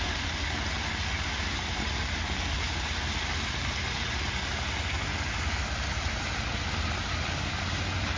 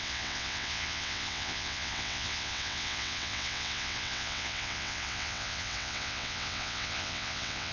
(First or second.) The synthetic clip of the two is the second